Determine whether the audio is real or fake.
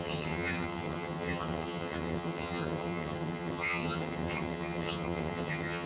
fake